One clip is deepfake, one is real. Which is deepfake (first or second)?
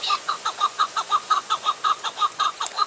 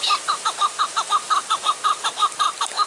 first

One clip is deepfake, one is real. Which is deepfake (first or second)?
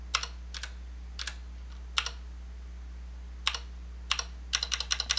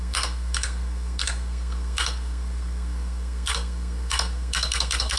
second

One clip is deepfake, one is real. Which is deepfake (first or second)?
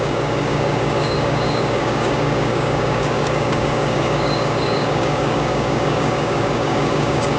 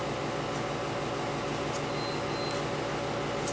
first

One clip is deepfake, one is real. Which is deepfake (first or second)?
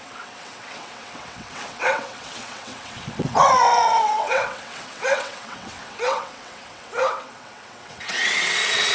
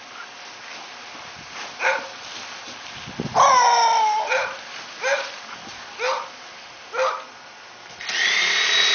first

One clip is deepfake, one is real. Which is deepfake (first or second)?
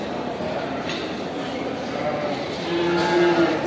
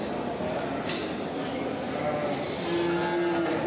first